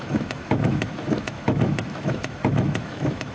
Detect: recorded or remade remade